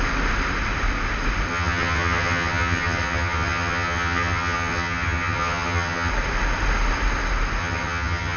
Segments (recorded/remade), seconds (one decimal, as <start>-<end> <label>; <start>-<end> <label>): 0.0-1.5 recorded; 1.5-6.1 remade; 6.1-7.6 recorded; 7.6-8.4 remade